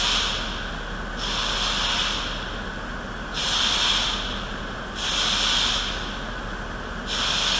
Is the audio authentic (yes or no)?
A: yes